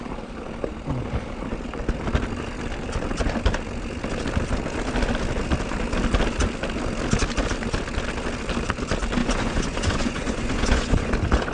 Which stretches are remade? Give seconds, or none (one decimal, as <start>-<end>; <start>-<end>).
9.2-11.1